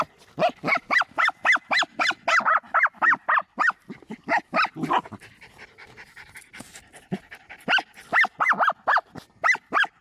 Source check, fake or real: real